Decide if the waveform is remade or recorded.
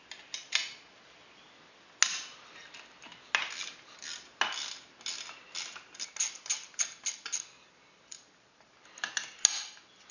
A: recorded